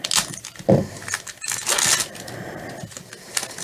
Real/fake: real